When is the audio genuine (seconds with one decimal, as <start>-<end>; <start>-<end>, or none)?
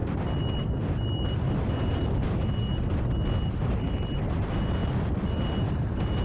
0.0-6.2